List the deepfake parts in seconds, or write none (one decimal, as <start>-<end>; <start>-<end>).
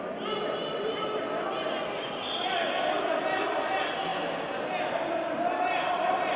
0.0-0.4; 2.0-2.6; 3.5-4.1; 5.6-6.4